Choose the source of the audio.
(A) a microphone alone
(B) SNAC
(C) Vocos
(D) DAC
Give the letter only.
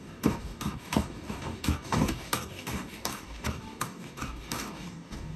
D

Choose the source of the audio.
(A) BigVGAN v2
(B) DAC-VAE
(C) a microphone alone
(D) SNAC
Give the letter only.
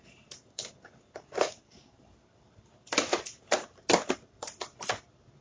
A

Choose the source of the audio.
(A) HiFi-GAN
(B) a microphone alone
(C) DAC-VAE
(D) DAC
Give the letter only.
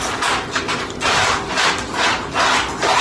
B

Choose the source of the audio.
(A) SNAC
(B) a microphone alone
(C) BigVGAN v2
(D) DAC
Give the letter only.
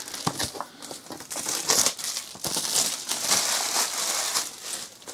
B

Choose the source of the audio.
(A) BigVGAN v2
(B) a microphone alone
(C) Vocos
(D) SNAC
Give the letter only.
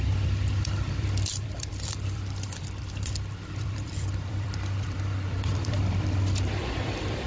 A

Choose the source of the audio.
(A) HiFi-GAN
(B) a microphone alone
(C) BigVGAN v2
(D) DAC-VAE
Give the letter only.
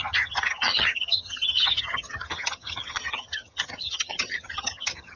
A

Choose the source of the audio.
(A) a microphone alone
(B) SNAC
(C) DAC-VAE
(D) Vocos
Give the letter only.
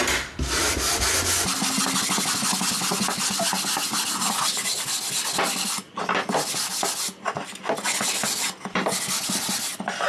A